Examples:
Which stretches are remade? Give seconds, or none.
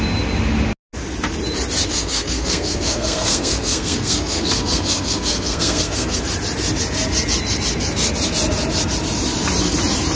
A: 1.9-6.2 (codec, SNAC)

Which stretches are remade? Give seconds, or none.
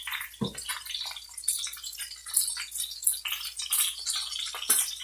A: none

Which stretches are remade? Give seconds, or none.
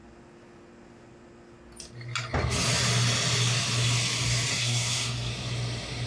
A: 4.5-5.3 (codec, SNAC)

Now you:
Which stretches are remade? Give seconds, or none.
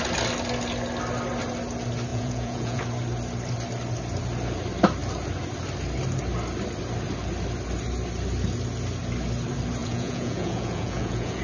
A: 2.1-2.8 (vocoder, Vocos); 9.8-11.4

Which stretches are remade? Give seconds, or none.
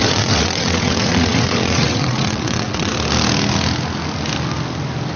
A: 0.0-2.9 (vocoder, WaveNeXt)